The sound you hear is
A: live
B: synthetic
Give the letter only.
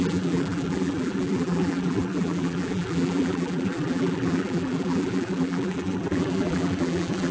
B